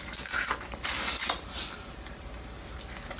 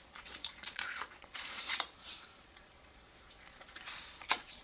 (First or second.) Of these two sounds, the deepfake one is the second